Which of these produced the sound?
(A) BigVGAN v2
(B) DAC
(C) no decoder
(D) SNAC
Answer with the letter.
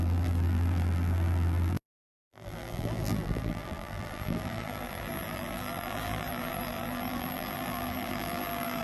A